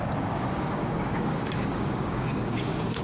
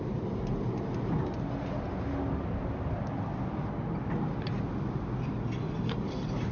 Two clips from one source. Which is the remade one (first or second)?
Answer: first